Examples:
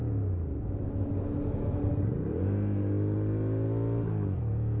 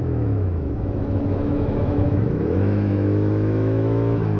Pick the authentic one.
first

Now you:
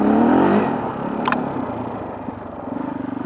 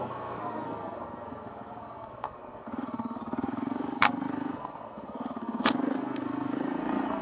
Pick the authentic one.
first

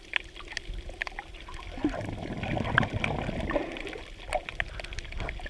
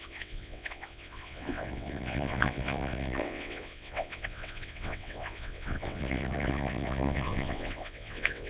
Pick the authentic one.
first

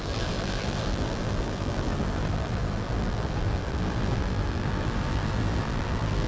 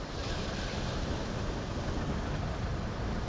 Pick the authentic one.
second